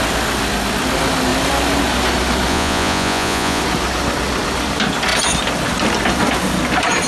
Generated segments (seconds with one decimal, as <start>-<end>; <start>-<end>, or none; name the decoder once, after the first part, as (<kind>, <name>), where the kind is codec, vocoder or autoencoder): 2.5-3.6 (vocoder, Vocos)